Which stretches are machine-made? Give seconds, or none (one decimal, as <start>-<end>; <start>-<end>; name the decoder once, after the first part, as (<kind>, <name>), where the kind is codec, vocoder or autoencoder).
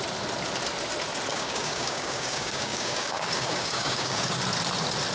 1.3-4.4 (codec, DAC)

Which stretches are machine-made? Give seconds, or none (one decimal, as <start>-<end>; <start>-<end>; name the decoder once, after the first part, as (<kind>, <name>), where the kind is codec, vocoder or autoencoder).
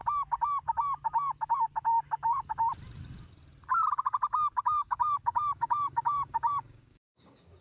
4.6-7.6 (codec, DAC)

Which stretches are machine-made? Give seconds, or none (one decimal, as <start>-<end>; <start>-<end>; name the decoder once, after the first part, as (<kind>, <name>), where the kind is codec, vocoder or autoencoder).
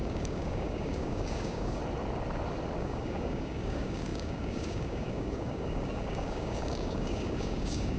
0.0-1.8 (codec, DAC); 2.8-8.0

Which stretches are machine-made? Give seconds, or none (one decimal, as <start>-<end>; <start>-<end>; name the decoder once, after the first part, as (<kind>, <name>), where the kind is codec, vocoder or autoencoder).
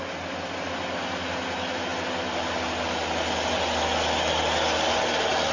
none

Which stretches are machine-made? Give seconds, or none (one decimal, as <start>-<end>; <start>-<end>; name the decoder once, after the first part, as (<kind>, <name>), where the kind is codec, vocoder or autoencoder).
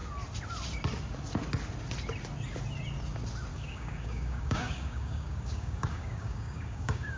3.5-7.2 (codec, DAC)